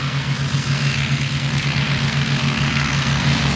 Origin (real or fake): fake